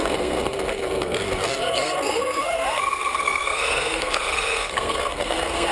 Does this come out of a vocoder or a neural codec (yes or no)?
yes